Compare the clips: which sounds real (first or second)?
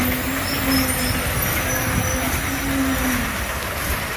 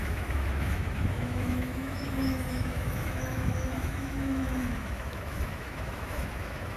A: first